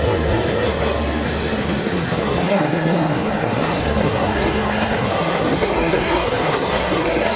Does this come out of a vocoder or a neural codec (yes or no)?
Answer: yes